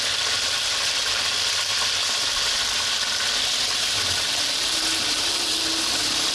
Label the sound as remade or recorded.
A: recorded